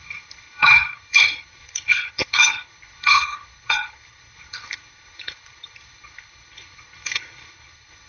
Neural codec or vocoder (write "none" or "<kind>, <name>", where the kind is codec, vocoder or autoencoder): codec, HILCodec